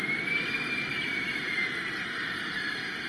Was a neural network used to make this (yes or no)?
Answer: no